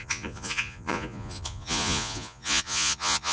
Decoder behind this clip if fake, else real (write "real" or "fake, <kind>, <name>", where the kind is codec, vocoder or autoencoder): fake, vocoder, Vocos